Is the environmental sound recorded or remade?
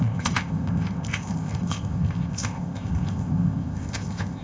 remade